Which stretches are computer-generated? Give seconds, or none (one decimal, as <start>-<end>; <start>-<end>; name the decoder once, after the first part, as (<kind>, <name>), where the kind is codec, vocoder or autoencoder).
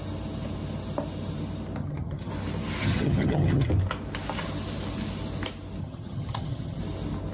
1.8-2.3 (vocoder, HiFi-GAN); 2.8-3.7; 5.8-6.8